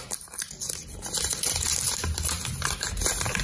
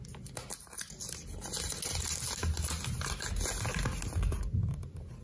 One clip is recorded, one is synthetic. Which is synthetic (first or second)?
first